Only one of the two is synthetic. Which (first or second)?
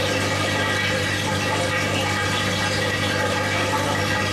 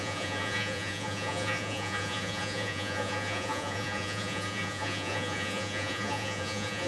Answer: second